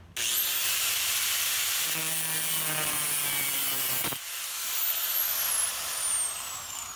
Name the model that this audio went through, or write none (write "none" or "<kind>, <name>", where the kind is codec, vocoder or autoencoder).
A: none